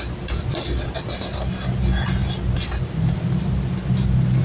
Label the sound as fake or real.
real